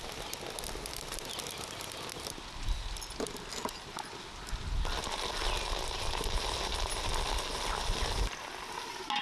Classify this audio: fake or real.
real